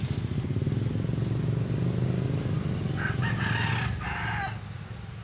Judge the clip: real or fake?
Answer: real